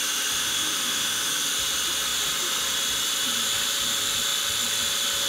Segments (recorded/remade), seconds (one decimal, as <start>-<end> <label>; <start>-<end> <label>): 0.0-0.4 recorded; 0.4-1.3 remade; 1.3-5.3 recorded

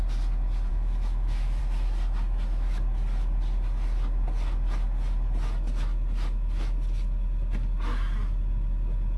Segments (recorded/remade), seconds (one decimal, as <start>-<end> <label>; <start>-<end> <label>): 0.0-0.7 recorded; 0.7-1.6 remade; 1.6-9.2 recorded

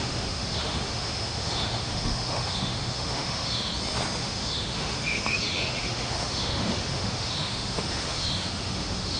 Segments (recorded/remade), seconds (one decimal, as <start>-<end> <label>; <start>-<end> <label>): 0.0-3.7 remade; 3.7-4.2 recorded; 4.2-9.2 remade

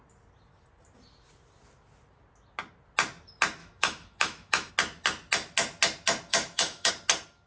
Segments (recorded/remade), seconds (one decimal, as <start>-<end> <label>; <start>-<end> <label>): 0.0-3.6 recorded; 3.6-4.7 remade; 4.7-6.3 recorded; 6.3-6.9 remade; 6.9-7.5 recorded

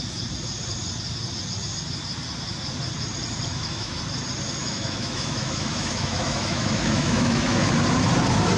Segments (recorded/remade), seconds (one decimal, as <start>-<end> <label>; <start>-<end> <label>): 0.0-3.5 recorded; 3.5-4.0 remade; 4.0-4.6 recorded; 4.6-7.7 remade; 7.7-8.6 recorded

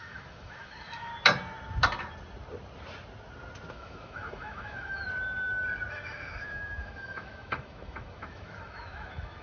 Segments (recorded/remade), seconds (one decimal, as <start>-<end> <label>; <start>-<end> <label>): 0.0-1.1 remade; 1.1-3.7 recorded; 3.7-5.0 remade; 5.0-5.9 recorded; 5.9-9.4 remade

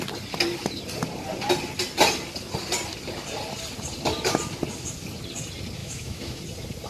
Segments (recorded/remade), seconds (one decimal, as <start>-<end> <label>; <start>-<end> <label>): 0.0-5.8 recorded; 5.8-6.4 remade; 6.4-6.9 recorded

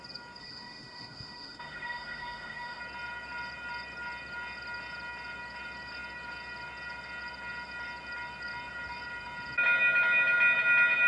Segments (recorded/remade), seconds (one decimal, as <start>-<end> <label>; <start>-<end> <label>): 0.0-0.4 recorded; 0.4-2.8 remade; 2.8-11.1 recorded